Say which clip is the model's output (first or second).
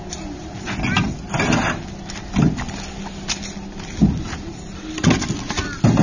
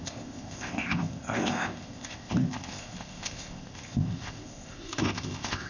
second